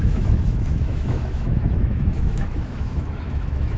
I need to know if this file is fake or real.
fake